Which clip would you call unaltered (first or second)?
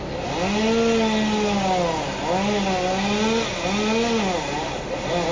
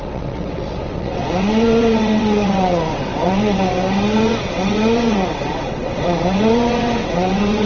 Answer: first